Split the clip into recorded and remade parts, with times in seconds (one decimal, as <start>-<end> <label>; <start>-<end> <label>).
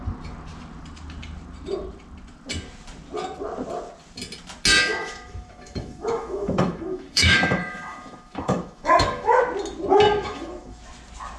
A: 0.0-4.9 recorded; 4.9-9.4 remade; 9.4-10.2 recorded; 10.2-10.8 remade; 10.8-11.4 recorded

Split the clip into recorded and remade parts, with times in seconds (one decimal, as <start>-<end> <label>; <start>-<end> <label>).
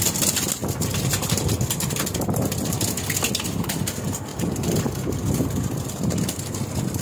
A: 0.0-0.6 recorded; 0.6-2.7 remade; 2.7-4.3 recorded; 4.3-6.6 remade; 6.6-7.0 recorded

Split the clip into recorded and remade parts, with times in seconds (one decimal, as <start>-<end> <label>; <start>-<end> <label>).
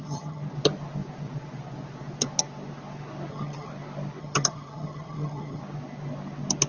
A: 0.0-0.4 remade; 0.4-3.3 recorded; 3.3-3.7 remade; 3.7-4.2 recorded; 4.2-5.6 remade; 5.6-6.7 recorded